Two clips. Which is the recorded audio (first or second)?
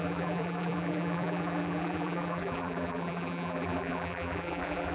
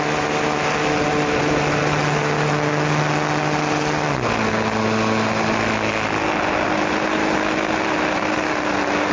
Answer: second